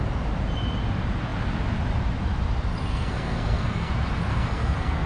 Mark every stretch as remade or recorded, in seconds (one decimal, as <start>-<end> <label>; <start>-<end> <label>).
0.0-2.9 recorded; 2.9-3.9 remade; 3.9-4.3 recorded; 4.3-5.1 remade